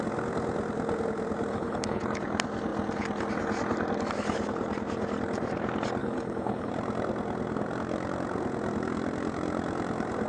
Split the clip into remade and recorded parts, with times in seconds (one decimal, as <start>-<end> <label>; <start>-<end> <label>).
0.0-1.5 recorded; 1.5-2.0 remade; 2.0-6.0 recorded; 6.0-6.7 remade; 6.7-10.3 recorded